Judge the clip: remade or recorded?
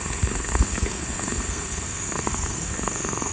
remade